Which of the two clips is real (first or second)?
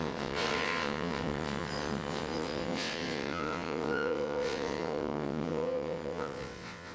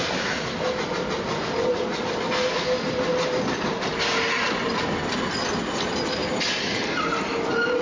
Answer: second